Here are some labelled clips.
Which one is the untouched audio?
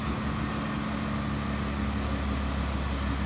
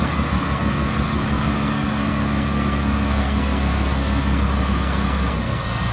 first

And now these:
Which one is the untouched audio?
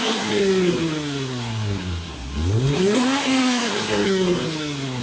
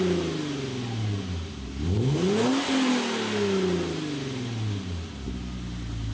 second